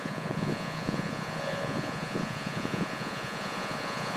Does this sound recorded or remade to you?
remade